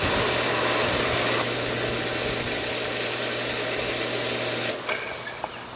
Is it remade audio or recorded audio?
recorded